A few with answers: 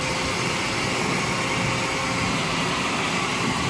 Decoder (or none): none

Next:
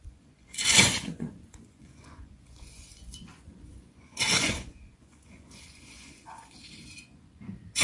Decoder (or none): vocoder, Vocos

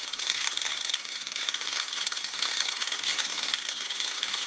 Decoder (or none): codec, SNAC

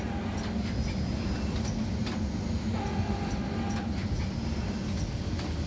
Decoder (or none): none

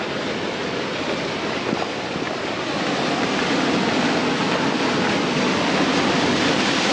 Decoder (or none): none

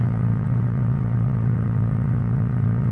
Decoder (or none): vocoder, WaveNeXt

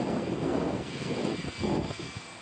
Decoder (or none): codec, SNAC